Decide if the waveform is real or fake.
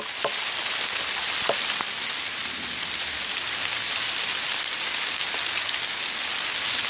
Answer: real